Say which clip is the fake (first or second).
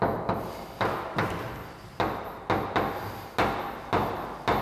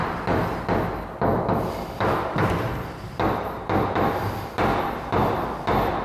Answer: second